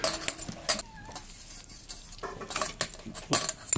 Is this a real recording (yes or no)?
yes